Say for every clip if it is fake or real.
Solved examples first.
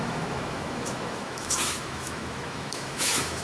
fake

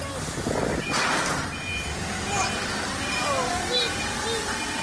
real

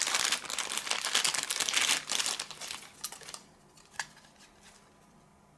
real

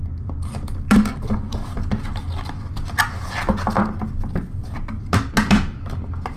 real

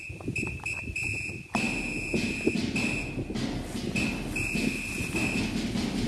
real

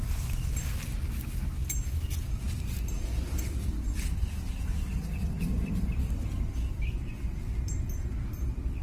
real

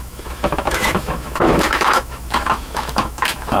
fake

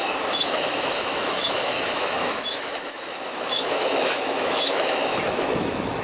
fake